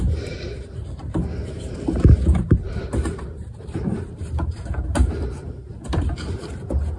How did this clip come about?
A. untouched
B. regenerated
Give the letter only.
B